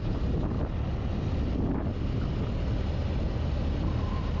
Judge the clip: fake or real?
real